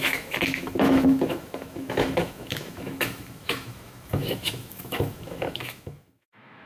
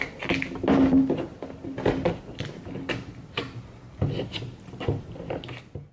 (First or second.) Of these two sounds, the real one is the second